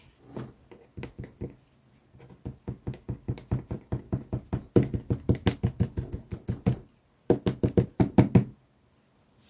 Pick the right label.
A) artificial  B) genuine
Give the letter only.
B